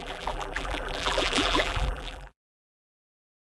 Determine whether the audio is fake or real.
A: fake